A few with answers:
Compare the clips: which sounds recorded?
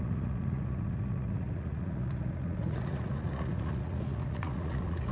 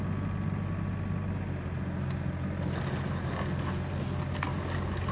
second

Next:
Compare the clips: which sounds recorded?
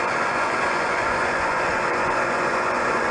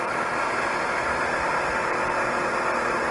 second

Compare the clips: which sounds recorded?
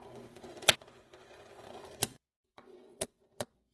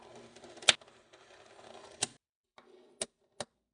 second